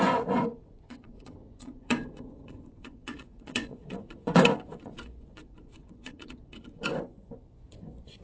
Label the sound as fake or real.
fake